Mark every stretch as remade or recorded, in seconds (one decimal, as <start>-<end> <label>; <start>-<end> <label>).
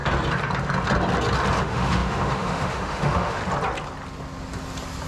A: 0.0-1.6 recorded; 1.6-3.4 remade; 3.4-5.1 recorded